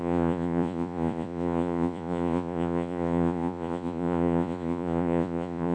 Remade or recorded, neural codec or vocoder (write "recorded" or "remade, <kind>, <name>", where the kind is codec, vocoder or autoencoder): remade, vocoder, Vocos